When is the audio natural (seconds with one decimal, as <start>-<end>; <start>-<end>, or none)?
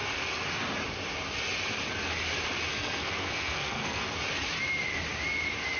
0.0-2.7; 4.0-5.8